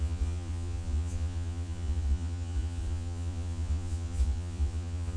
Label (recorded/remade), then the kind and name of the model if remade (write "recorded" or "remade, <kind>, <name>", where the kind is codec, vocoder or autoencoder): remade, vocoder, Vocos